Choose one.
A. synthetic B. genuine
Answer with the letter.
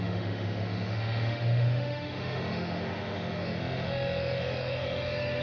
A